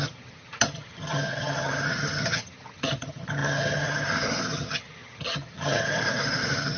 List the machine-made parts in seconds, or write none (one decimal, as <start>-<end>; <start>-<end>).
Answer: 0.0-6.8